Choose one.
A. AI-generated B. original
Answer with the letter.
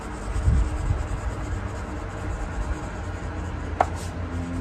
B